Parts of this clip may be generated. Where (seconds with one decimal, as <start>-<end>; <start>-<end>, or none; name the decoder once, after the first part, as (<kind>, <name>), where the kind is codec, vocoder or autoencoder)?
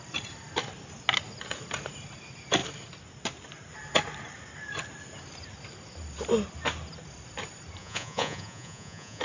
7.8-9.2 (vocoder, Vocos)